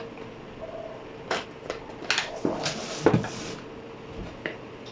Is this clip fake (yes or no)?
no